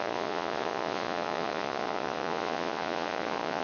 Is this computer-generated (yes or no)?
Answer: yes